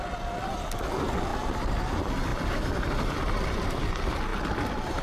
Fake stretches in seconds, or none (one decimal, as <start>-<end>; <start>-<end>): 1.3-1.9; 2.3-3.3; 4.3-5.0